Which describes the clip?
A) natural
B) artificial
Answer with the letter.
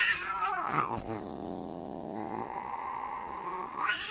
B